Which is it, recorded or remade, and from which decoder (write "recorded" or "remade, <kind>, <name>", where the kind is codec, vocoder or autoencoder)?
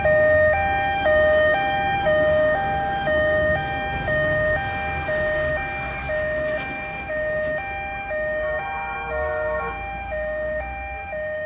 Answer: remade, codec, DAC